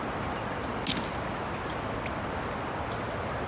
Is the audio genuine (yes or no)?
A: yes